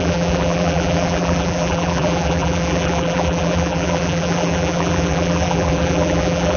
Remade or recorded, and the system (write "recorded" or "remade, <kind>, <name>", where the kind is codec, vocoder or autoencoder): remade, vocoder, BigVGAN v2